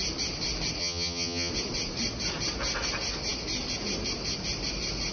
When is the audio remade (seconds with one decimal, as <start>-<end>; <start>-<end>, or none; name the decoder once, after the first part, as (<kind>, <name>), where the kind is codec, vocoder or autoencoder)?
0.8-1.5 (vocoder, HiFi-GAN)